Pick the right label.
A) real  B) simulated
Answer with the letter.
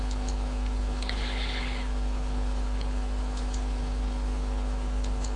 B